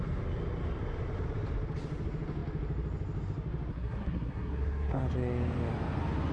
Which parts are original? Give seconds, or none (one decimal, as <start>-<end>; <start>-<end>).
0.0-3.7; 5.0-6.3